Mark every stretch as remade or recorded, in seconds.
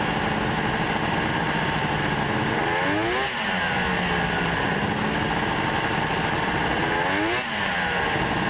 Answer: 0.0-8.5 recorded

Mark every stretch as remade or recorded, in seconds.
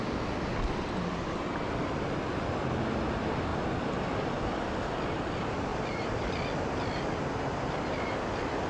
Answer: 0.0-5.7 recorded; 5.7-6.3 remade; 6.3-8.7 recorded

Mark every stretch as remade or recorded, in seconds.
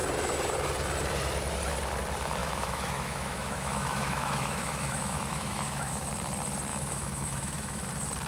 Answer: 0.0-2.4 recorded; 2.4-6.1 remade; 6.1-6.7 recorded; 6.7-7.9 remade; 7.9-8.3 recorded